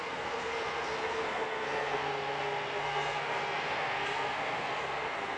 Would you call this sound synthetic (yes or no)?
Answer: yes